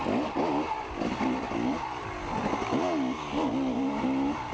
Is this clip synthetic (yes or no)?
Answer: no